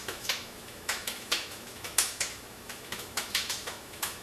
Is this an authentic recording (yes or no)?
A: no